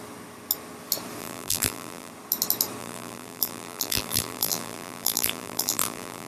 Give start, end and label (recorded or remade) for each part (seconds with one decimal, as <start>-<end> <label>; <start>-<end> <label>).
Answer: 0.0-1.2 recorded; 1.2-2.1 remade; 2.1-2.8 recorded; 2.8-6.3 remade